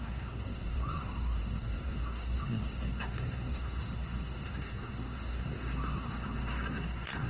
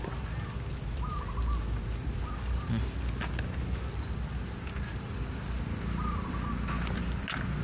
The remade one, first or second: first